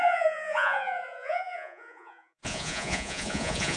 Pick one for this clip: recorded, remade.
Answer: remade